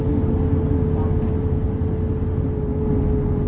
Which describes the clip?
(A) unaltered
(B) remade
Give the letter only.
A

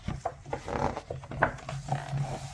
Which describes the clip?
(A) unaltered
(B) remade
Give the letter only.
A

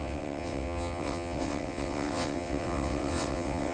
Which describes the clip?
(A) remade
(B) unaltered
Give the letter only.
A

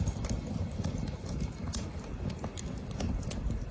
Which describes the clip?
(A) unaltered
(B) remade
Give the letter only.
A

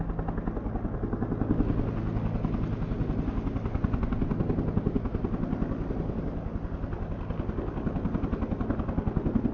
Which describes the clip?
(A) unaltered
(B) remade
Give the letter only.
A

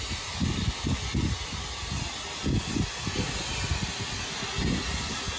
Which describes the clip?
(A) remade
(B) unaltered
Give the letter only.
B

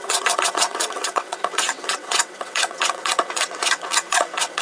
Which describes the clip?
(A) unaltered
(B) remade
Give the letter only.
B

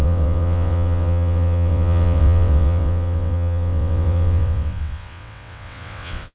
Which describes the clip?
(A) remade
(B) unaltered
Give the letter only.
A